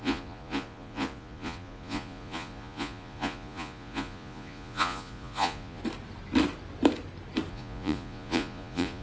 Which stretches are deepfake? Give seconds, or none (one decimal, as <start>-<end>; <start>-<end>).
0.0-5.8; 7.5-9.0